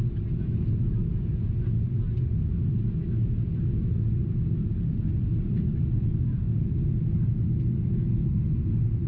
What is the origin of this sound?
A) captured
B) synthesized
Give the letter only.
A